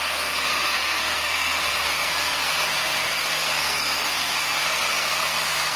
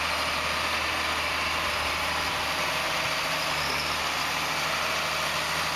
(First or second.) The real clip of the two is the second